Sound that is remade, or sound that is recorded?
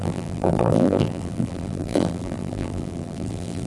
remade